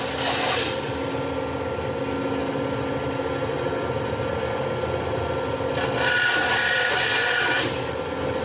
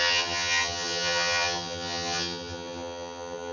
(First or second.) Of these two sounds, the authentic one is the first